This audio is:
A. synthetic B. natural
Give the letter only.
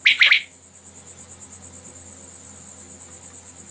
B